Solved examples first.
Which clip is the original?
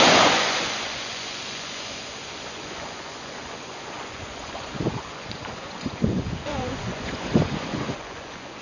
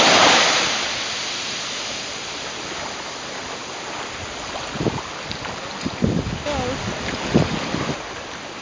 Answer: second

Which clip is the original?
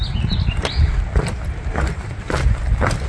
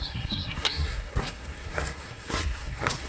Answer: first